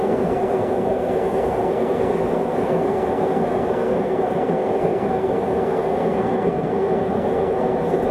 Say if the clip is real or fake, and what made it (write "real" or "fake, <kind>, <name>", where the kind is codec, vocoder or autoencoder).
fake, codec, SNAC